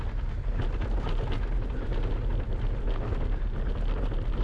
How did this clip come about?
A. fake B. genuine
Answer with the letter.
B